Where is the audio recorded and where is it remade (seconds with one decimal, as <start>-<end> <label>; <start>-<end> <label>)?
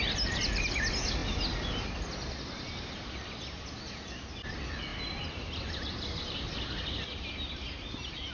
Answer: 0.0-8.3 recorded